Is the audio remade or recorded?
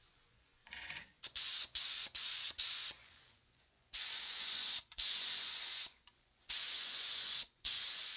remade